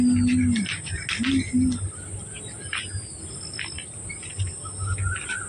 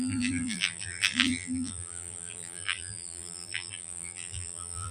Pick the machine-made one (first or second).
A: second